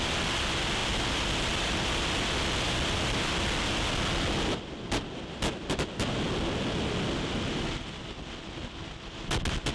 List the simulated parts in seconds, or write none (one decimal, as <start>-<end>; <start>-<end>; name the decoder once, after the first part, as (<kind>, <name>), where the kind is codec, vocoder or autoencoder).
none